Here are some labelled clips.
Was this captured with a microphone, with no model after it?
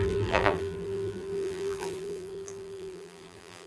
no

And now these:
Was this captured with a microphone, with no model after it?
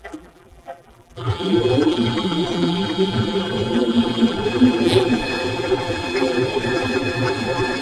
no